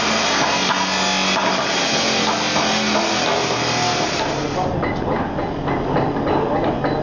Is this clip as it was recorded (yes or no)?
yes